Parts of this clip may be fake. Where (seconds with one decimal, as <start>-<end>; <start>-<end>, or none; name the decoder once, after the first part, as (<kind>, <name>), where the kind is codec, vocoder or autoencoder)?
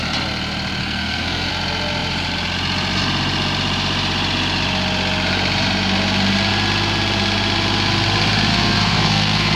0.8-1.5 (codec, SNAC); 8.5-9.6